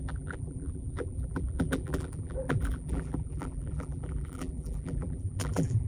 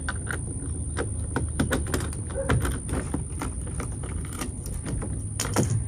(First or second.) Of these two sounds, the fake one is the first